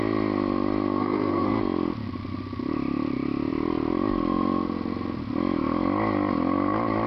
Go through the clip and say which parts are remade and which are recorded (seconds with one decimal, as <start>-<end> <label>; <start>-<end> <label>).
0.0-1.0 recorded; 1.0-1.6 remade; 1.6-7.1 recorded